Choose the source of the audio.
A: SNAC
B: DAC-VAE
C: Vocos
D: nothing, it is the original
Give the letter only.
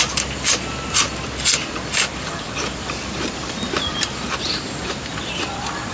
D